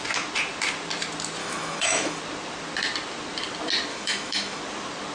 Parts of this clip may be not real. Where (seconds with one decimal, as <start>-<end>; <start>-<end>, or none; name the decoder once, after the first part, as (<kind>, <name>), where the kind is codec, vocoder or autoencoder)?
1.4-2.2 (autoencoder, DAC-VAE); 3.9-4.6